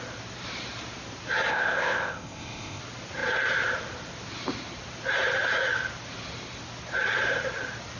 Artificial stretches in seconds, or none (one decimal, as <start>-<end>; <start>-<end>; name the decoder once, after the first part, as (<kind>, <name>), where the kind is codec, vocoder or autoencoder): 1.5-2.8 (codec, ZipCodec)